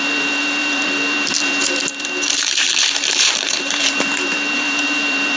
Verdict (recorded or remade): remade